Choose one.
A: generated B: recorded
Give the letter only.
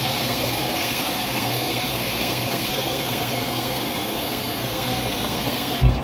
A